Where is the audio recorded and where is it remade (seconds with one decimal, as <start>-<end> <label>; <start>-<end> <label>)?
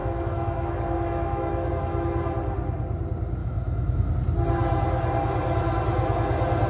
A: 0.0-1.7 remade; 1.7-3.4 recorded; 3.4-4.1 remade; 4.1-6.7 recorded